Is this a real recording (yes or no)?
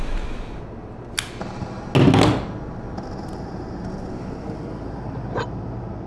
yes